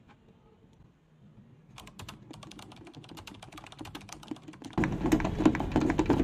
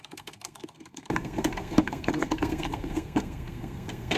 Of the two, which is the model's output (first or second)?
second